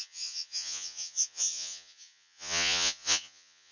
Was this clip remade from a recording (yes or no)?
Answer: yes